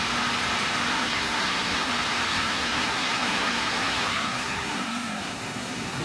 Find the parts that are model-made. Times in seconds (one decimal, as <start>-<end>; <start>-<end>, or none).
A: 0.9-1.9; 2.3-6.0